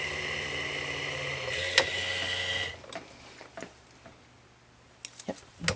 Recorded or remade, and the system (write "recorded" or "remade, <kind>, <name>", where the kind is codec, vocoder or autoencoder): recorded